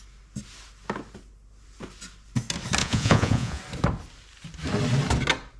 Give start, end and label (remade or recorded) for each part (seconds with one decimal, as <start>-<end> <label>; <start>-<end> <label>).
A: 0.0-2.8 recorded; 2.8-3.6 remade; 3.6-5.6 recorded